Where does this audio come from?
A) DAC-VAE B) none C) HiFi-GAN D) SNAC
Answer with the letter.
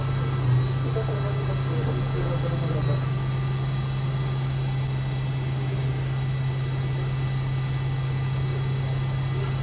B